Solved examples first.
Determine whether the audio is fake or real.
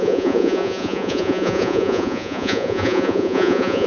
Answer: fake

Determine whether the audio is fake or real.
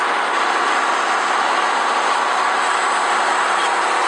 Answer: real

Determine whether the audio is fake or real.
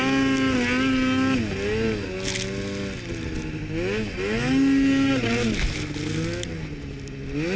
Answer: real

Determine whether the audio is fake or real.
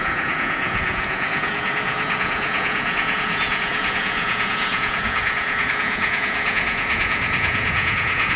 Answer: fake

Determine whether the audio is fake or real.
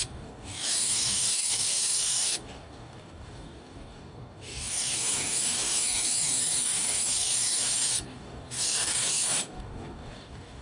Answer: fake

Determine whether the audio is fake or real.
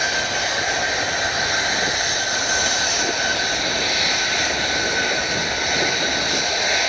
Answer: real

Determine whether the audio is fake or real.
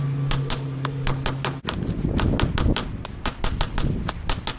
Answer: real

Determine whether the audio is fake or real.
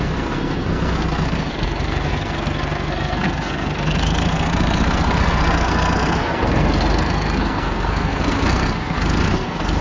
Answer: fake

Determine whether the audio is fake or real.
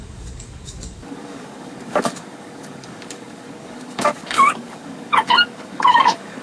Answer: fake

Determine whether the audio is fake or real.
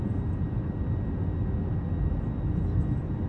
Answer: real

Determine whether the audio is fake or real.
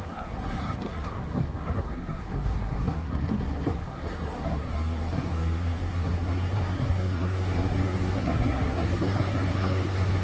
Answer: fake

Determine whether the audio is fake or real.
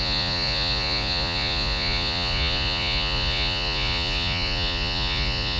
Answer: fake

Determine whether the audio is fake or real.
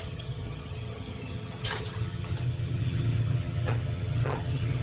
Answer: fake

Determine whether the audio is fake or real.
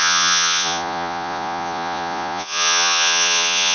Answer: fake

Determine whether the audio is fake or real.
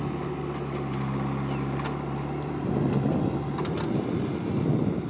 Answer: real